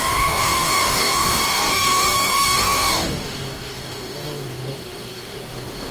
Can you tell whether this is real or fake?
fake